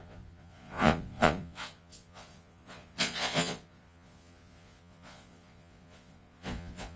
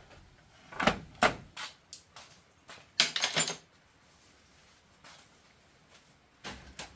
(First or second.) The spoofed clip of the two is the first